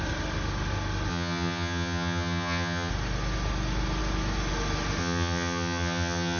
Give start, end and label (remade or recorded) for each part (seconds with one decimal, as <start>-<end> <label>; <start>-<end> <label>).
0.0-1.1 recorded; 1.1-2.9 remade; 2.9-5.0 recorded; 5.0-6.4 remade

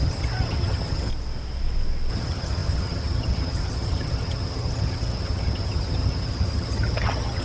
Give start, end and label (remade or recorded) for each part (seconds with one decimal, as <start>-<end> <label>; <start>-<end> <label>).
0.0-1.1 remade; 1.1-2.1 recorded; 2.1-7.4 remade

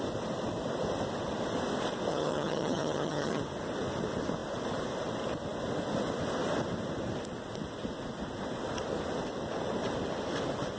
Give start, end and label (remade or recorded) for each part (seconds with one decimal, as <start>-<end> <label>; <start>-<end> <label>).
0.0-2.1 recorded; 2.1-3.4 remade; 3.4-10.8 recorded

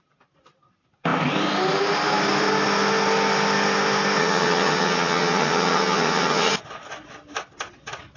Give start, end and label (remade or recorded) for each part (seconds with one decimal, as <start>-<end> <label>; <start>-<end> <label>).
0.0-4.2 recorded; 4.2-6.5 remade; 6.5-8.2 recorded